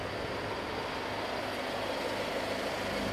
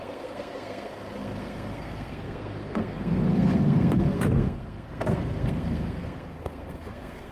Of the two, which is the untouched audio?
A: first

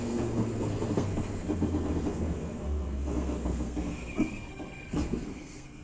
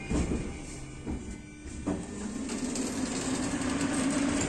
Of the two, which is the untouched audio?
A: second